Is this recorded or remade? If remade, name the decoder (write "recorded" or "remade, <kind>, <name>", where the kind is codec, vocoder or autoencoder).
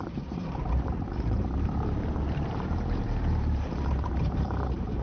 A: remade, vocoder, BigVGAN v2